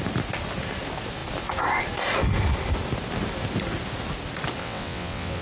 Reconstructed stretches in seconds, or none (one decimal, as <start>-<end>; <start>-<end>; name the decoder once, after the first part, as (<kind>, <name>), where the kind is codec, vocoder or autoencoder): 4.6-5.4 (vocoder, WaveNeXt)